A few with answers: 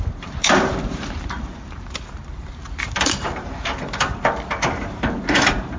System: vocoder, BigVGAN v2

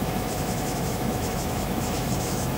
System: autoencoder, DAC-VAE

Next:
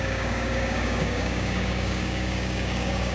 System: codec, DAC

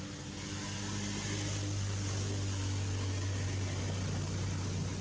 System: none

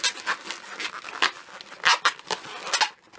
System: none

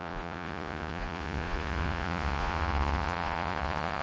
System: vocoder, Vocos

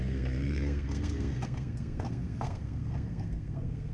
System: codec, SNAC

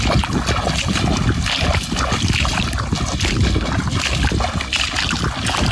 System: none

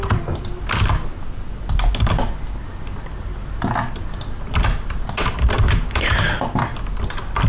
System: none